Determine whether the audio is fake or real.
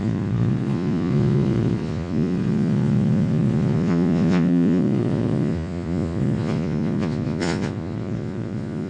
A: fake